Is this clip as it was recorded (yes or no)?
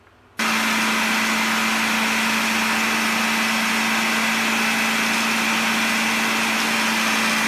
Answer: yes